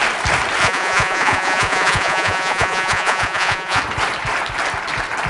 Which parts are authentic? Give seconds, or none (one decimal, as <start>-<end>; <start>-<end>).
0.0-0.6; 3.8-5.3